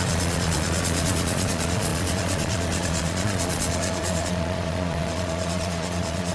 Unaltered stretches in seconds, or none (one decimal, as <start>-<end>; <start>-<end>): none